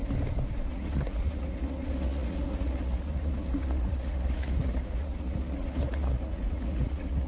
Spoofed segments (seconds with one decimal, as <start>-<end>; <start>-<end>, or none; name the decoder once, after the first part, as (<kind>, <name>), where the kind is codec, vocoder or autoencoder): 0.7-7.3 (vocoder, Vocos)